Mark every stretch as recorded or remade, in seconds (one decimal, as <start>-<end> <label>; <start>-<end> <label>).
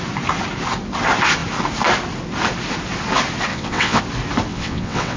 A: 0.0-3.5 recorded; 3.5-4.0 remade; 4.0-4.5 recorded; 4.5-5.2 remade